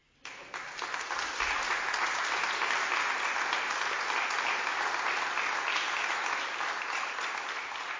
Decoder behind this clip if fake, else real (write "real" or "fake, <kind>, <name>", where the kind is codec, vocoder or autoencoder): real